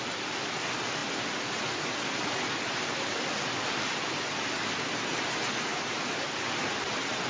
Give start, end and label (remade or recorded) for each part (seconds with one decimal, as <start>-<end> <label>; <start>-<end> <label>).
0.0-5.7 recorded; 5.7-6.4 remade; 6.4-7.3 recorded